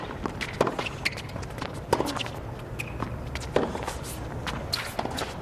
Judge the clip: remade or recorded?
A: recorded